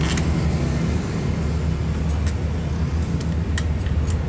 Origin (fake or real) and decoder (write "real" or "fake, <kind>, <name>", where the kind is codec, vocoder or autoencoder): real